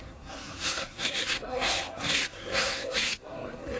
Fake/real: fake